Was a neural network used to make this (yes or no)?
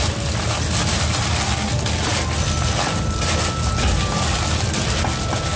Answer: no